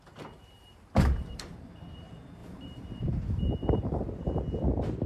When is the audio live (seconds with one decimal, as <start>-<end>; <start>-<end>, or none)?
4.2-5.1